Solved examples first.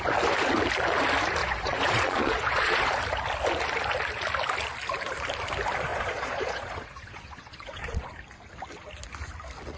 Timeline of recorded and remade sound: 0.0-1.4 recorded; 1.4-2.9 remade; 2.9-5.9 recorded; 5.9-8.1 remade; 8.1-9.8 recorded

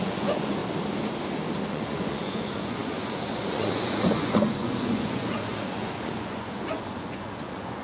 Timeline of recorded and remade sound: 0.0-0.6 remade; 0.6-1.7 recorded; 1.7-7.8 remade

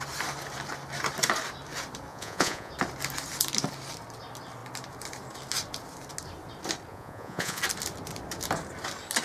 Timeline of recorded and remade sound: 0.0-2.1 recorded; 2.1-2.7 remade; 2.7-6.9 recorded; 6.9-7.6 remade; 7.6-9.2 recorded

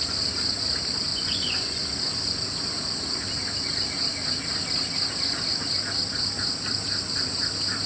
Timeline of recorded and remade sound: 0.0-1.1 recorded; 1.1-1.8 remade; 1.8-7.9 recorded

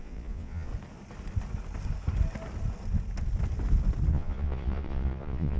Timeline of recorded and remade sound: 0.0-0.7 remade; 0.7-4.1 recorded; 4.1-5.6 remade